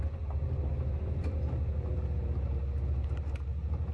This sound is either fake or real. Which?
real